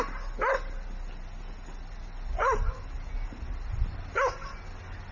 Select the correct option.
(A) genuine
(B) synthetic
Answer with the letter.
A